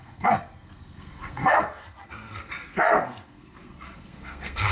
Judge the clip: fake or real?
fake